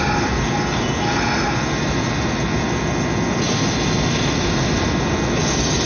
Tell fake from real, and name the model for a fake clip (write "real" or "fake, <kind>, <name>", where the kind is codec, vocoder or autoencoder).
real